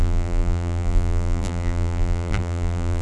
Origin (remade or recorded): remade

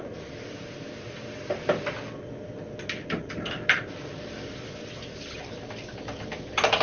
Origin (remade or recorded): recorded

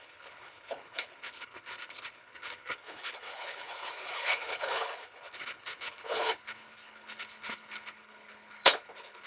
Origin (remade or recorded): remade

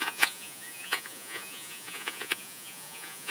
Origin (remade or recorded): remade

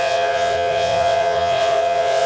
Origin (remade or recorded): remade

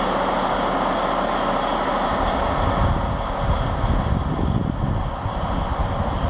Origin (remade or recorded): recorded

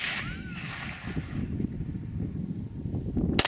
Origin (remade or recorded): recorded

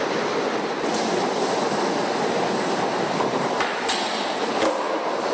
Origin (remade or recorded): recorded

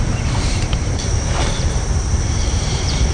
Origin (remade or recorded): remade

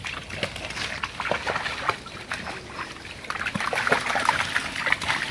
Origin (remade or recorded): recorded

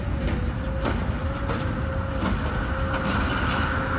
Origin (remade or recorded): recorded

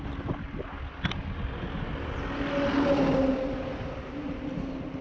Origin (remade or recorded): recorded